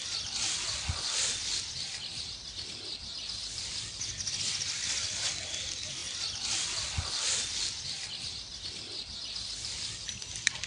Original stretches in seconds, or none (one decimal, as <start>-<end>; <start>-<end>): 0.0-10.7